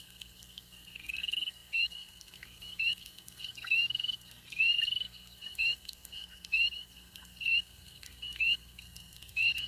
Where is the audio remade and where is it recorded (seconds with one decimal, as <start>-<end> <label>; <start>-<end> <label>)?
0.0-9.7 remade